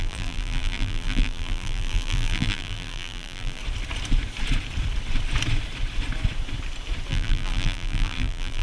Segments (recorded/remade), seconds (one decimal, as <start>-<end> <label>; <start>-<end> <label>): 0.0-3.6 remade; 3.6-7.1 recorded; 7.1-8.6 remade